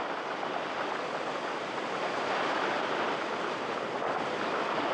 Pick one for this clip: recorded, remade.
recorded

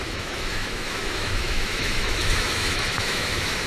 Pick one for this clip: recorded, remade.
remade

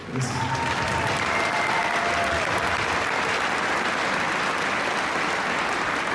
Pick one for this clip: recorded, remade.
recorded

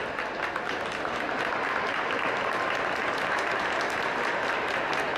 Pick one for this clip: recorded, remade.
recorded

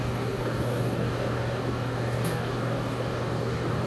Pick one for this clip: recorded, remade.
remade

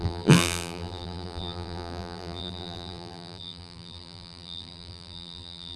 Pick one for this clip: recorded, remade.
remade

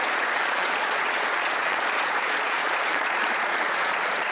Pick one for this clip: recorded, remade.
remade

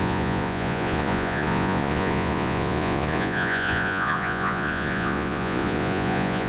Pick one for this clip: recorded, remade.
remade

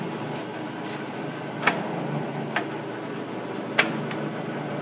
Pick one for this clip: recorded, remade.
recorded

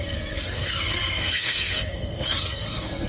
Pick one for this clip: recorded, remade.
remade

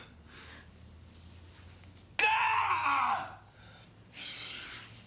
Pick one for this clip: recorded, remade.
recorded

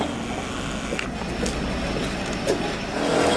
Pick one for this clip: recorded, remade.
recorded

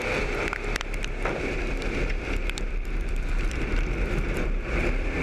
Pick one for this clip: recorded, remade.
remade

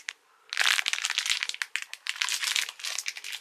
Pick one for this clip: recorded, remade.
recorded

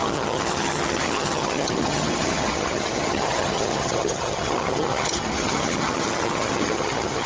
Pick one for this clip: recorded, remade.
remade